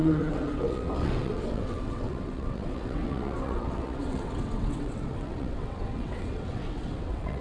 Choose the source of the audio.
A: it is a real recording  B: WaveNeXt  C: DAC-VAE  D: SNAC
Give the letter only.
B